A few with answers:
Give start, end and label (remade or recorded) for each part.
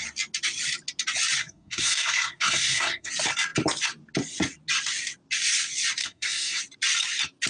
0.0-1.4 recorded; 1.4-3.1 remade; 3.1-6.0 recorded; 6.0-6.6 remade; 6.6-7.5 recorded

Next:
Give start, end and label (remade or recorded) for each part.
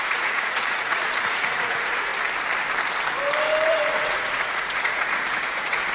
0.0-2.1 remade; 2.1-3.7 recorded; 3.7-5.9 remade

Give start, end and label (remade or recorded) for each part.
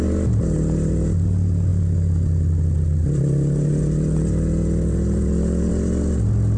0.0-6.6 recorded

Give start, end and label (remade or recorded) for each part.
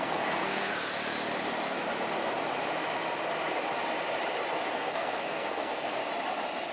0.0-0.7 remade; 0.7-4.7 recorded; 4.7-6.0 remade; 6.0-6.7 recorded